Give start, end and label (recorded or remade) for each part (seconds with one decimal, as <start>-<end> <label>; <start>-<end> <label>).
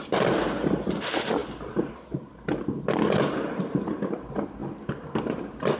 0.0-5.8 recorded